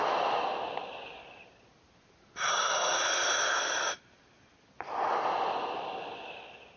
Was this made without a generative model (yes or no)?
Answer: yes